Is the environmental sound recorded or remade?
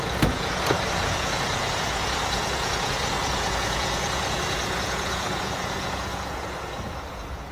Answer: remade